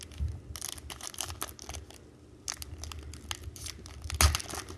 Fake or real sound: real